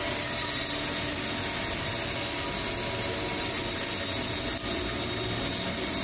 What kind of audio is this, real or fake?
real